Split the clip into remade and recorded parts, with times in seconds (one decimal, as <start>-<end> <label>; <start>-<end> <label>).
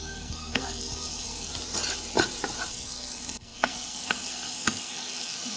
0.0-1.5 remade; 1.5-2.7 recorded; 2.7-5.6 remade